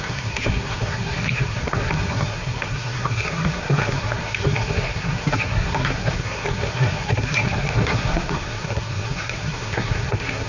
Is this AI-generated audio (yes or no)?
yes